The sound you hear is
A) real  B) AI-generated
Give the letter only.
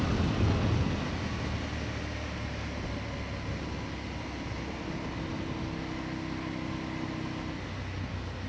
A